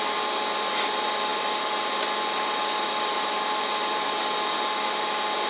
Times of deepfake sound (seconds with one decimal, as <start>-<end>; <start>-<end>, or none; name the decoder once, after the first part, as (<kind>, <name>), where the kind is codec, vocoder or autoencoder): none